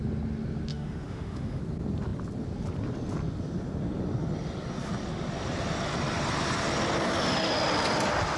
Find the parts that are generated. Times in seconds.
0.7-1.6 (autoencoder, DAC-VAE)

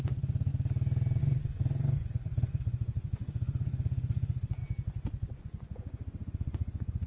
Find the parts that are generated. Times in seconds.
0.0-0.5 (vocoder, Vocos); 1.2-4.6; 5.4-7.1

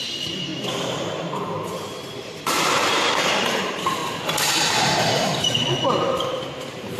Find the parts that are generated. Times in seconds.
0.0-4.0 (vocoder, BigVGAN v2); 6.3-7.0

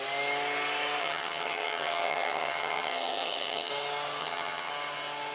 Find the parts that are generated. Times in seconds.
1.0-3.7 (vocoder, HiFi-GAN); 4.2-4.7